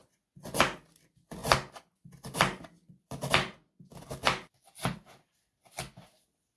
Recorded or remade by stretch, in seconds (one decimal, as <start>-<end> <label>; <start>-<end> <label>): 0.0-0.6 remade; 0.6-6.6 recorded